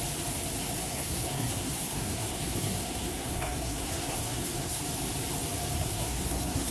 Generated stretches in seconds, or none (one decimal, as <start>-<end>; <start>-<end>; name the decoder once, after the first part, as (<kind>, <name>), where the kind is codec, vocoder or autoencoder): 0.8-4.8 (codec, SNAC); 5.8-6.7